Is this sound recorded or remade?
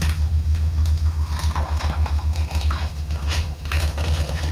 remade